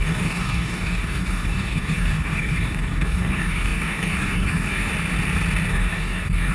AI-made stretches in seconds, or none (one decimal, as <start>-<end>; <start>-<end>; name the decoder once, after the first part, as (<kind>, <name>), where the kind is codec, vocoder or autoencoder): 0.0-4.9 (codec, DAC); 5.7-6.5